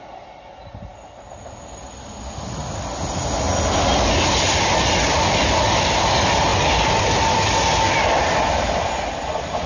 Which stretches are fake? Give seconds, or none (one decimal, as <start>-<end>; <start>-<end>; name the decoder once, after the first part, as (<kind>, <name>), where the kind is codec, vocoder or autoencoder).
none